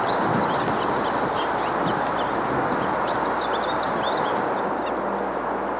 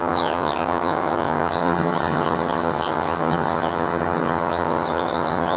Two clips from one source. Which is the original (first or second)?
first